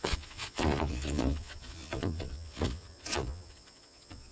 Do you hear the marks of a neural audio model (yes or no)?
yes